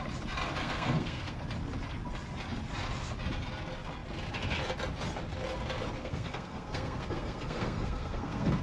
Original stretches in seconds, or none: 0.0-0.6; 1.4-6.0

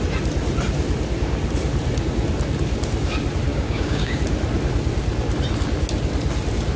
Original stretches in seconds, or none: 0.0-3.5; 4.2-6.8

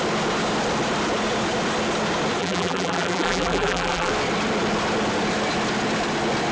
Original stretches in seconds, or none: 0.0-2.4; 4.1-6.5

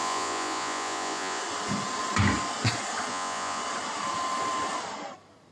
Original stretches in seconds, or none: 1.4-3.1; 3.6-5.5

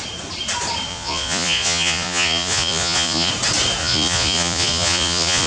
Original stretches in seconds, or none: 0.0-0.9; 3.3-3.8

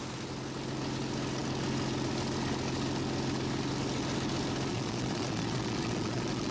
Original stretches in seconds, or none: 0.0-4.7

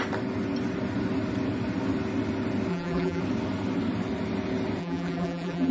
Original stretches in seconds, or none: 0.0-2.7; 3.2-4.8

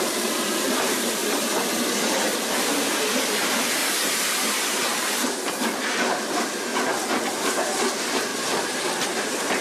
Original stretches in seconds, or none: 1.2-3.2; 6.7-7.3